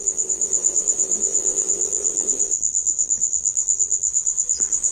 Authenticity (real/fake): fake